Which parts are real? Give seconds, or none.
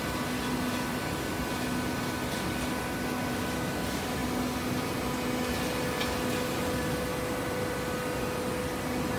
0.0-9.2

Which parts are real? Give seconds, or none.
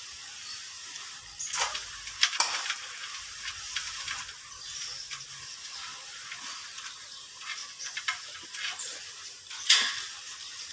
5.9-6.4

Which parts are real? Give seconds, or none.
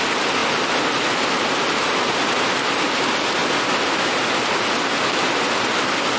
0.0-6.2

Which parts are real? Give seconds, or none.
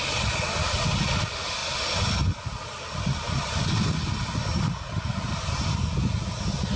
0.0-1.6; 5.7-6.8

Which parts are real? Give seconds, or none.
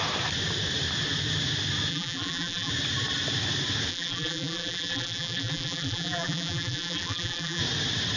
0.0-1.9; 2.7-3.9; 7.6-8.2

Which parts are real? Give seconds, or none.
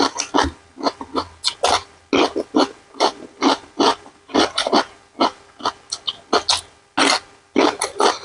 0.0-3.9; 4.7-8.2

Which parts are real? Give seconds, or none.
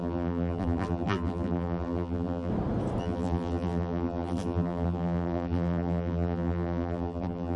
2.5-3.0